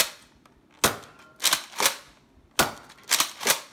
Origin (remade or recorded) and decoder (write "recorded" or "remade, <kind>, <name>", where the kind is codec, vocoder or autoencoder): recorded